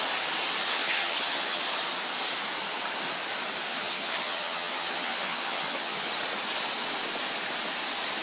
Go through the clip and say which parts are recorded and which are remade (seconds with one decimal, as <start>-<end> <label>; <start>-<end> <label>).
0.0-0.8 recorded; 0.8-1.6 remade; 1.6-3.7 recorded; 3.7-6.1 remade; 6.1-8.2 recorded